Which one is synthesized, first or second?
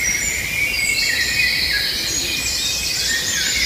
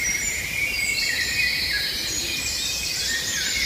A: second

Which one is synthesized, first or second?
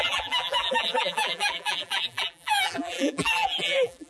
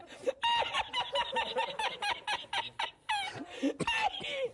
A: first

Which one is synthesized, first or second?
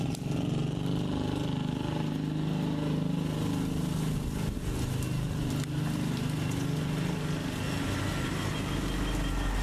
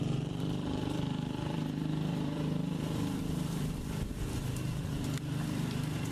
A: second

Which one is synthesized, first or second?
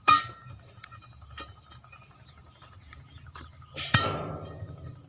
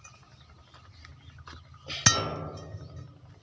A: first